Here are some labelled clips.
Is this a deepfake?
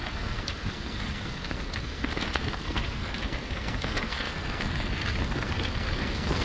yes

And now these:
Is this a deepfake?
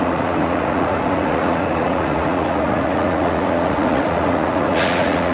yes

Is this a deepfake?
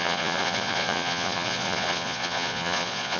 yes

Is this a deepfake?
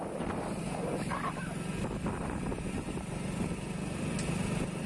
no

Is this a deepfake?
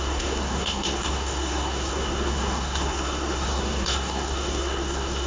yes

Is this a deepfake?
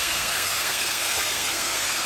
yes